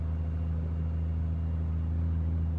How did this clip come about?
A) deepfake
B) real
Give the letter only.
B